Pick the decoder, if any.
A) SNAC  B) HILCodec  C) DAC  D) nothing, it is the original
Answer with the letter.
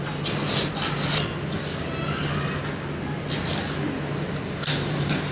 D